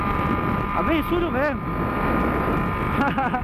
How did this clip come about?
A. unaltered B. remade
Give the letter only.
A